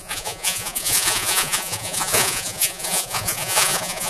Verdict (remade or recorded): remade